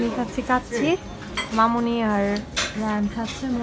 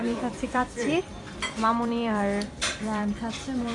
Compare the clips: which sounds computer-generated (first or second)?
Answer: second